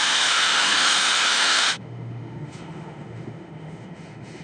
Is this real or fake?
fake